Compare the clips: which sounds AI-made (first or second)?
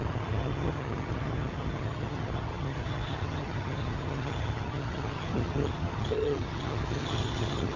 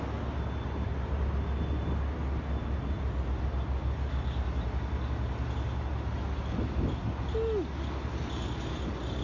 first